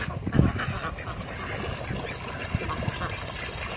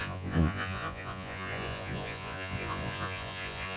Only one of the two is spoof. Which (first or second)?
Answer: second